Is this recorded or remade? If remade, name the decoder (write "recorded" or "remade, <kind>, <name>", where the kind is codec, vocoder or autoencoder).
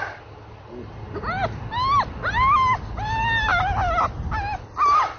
recorded